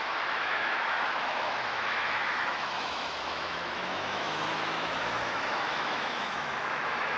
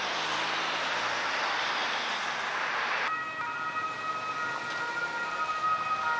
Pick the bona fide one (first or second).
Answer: second